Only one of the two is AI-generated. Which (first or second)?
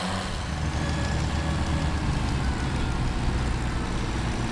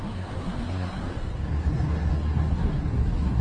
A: second